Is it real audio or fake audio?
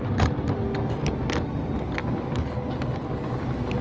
real